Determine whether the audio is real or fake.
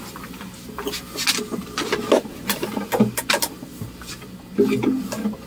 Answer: real